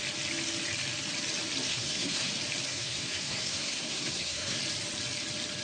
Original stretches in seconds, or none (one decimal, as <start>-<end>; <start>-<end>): 0.0-1.7; 2.3-2.7; 4.6-5.6